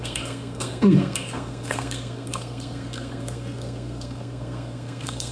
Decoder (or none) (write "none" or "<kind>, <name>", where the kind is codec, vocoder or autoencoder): codec, SNAC